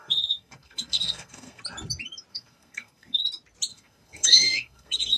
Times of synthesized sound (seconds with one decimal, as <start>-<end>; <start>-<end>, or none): 0.0-1.6; 2.3-3.2; 3.7-5.2